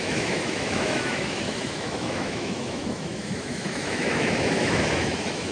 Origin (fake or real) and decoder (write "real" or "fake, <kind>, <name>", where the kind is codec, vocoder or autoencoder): fake, autoencoder, DAC-VAE